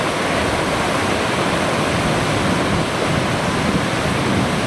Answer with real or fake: real